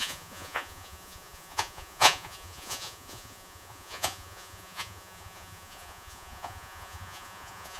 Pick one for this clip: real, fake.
fake